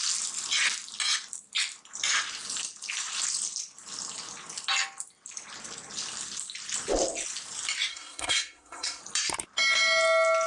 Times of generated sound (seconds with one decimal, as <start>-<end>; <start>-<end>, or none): 7.9-9.0